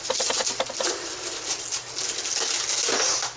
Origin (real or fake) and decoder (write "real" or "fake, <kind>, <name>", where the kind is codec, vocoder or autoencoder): real